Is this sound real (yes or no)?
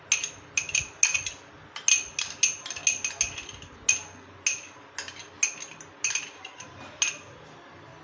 yes